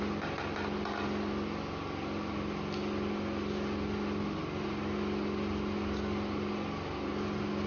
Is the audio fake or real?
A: real